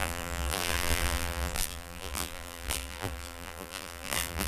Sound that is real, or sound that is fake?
fake